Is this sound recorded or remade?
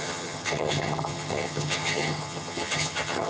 remade